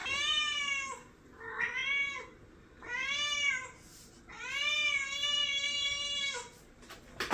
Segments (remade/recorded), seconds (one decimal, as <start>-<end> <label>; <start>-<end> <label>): 0.0-0.6 remade; 0.6-1.8 recorded; 1.8-3.5 remade; 3.5-7.3 recorded